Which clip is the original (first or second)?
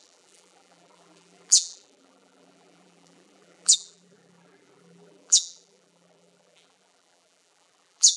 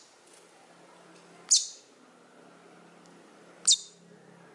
second